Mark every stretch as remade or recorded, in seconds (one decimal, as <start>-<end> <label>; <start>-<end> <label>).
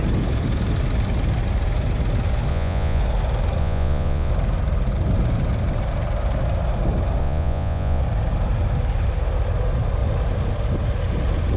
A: 0.0-2.5 recorded; 2.5-3.0 remade; 3.0-3.6 recorded; 3.6-4.3 remade; 4.3-7.2 recorded; 7.2-8.0 remade; 8.0-11.6 recorded